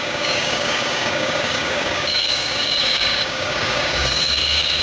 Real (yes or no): no